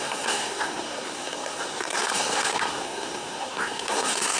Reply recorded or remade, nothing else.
remade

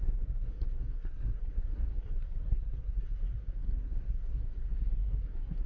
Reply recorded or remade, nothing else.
remade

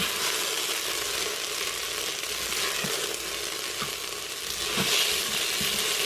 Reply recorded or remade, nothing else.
recorded